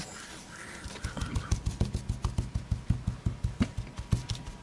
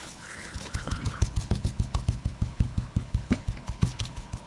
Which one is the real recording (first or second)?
first